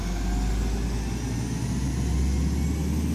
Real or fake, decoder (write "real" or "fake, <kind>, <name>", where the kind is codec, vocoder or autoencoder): real